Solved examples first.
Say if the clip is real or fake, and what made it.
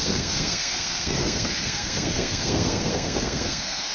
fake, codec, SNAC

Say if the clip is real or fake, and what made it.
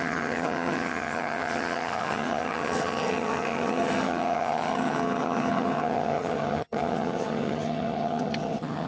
fake, vocoder, HiFi-GAN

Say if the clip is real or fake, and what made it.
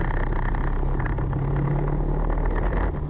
real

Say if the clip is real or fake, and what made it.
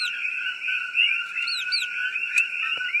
fake, vocoder, BigVGAN v2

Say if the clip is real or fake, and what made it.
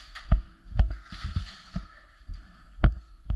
fake, codec, SNAC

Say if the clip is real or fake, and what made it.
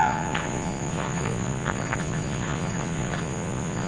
fake, vocoder, Vocos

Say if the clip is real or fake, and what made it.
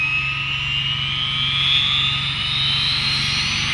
real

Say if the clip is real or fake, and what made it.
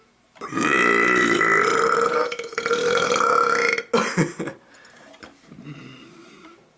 real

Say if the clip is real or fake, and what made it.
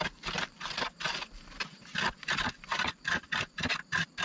fake, vocoder, BigVGAN v2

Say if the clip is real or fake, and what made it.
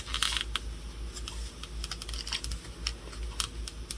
real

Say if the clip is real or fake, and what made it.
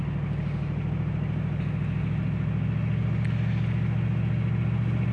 real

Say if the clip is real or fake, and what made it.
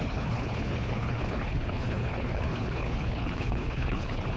fake, codec, HILCodec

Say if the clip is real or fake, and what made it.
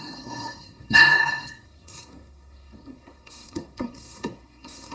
fake, codec, SNAC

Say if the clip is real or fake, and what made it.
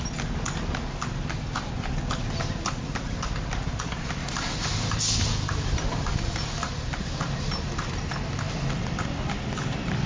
real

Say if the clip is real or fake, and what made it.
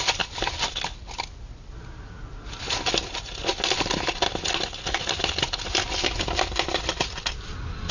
real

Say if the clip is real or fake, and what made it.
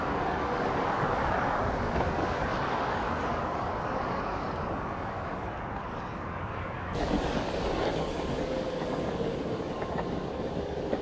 fake, codec, DAC